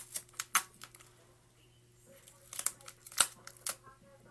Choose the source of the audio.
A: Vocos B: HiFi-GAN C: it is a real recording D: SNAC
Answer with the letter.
C